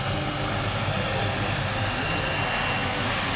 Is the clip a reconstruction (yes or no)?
no